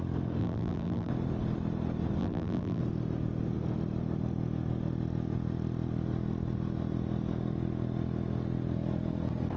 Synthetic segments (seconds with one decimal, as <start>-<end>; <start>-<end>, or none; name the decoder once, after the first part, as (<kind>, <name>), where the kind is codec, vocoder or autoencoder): 0.4-1.1 (vocoder, BigVGAN v2); 2.2-2.8